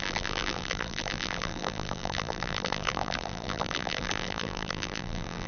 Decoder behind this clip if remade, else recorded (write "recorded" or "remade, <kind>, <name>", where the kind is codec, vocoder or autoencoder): remade, vocoder, BigVGAN v2